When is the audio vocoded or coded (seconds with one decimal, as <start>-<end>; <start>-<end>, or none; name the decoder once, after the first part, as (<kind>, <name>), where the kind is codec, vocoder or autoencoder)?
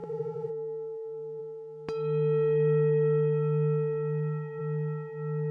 0.0-0.5 (vocoder, Vocos)